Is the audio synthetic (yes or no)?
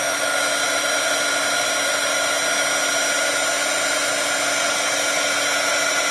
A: no